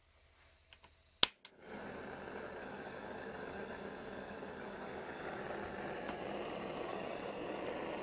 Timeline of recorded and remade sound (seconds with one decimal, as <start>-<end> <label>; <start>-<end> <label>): 0.0-2.6 recorded; 2.6-5.4 remade; 5.4-6.9 recorded; 6.9-7.6 remade; 7.6-8.0 recorded